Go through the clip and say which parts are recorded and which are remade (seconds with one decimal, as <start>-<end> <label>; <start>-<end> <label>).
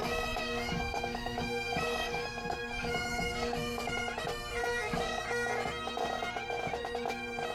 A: 0.0-3.9 remade; 3.9-4.6 recorded; 4.6-5.2 remade; 5.2-7.5 recorded